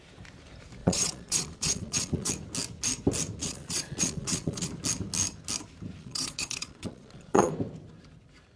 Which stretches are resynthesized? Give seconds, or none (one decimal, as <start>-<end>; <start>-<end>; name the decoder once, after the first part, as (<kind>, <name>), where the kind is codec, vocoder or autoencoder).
0.8-2.3 (vocoder, Vocos); 3.4-4.7; 6.0-7.5